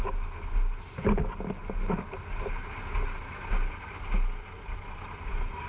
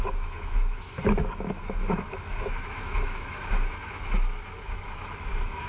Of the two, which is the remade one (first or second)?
second